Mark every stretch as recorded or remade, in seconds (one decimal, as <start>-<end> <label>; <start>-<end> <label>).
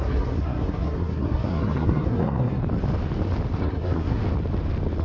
0.0-2.6 remade; 2.6-3.6 recorded; 3.6-4.2 remade; 4.2-5.0 recorded